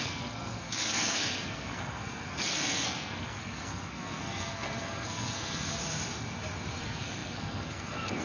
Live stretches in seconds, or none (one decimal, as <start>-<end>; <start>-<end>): 5.8-6.8